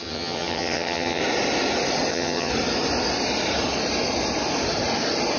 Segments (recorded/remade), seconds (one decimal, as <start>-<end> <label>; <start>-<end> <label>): 0.0-1.2 remade; 1.2-2.1 recorded; 2.1-2.5 remade; 2.5-5.4 recorded